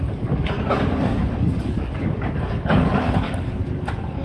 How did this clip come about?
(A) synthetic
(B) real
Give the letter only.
A